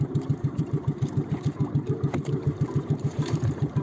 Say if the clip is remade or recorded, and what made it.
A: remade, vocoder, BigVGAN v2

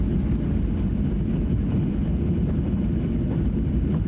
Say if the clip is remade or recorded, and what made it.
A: remade, vocoder, BigVGAN v2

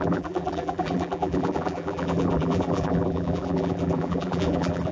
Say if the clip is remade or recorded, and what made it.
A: remade, vocoder, BigVGAN v2